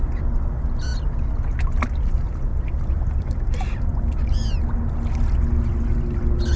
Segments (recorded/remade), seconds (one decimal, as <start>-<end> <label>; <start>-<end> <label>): 0.0-2.5 recorded; 2.5-4.5 remade; 4.5-6.6 recorded